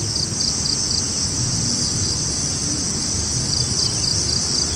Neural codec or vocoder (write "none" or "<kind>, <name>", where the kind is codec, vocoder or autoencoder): none